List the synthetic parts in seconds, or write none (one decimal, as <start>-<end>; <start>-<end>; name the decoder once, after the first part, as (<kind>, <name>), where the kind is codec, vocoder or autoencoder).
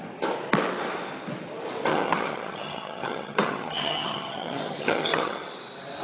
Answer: 1.9-5.5 (vocoder, HiFi-GAN)